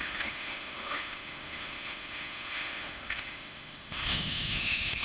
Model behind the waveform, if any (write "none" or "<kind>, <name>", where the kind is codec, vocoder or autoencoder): autoencoder, DAC-VAE